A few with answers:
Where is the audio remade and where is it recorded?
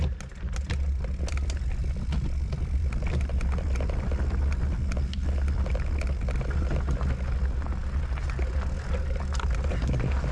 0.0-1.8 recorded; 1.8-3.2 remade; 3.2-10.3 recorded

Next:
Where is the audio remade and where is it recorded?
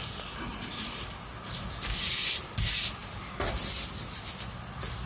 0.0-5.1 recorded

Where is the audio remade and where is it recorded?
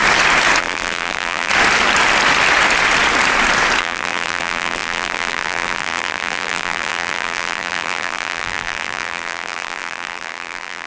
0.0-0.6 recorded; 0.6-1.5 remade; 1.5-3.8 recorded; 3.8-10.9 remade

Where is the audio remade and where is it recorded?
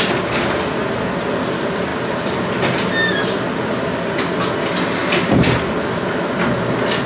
0.0-7.1 recorded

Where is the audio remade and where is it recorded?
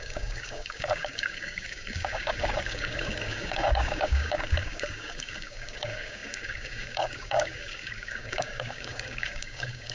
0.0-9.9 remade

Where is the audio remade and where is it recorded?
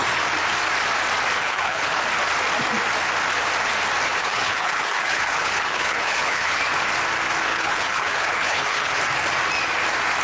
0.0-1.4 recorded; 1.4-1.9 remade; 1.9-4.2 recorded; 4.2-6.6 remade; 6.6-7.5 recorded; 7.5-9.0 remade; 9.0-10.2 recorded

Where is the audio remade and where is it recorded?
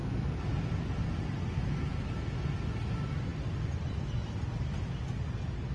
0.0-5.7 recorded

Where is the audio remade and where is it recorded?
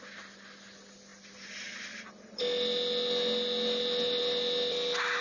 0.0-5.2 recorded